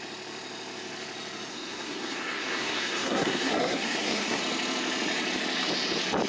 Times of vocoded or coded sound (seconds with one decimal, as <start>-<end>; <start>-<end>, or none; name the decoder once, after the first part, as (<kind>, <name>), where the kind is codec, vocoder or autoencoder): 1.5-4.4 (codec, SNAC)